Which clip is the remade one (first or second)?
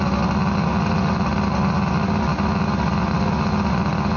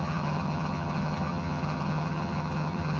second